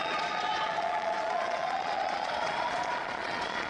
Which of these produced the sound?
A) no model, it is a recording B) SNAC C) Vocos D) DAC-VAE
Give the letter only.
C